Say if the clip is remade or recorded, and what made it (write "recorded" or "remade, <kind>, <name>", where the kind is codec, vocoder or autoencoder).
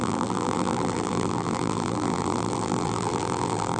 remade, vocoder, BigVGAN v2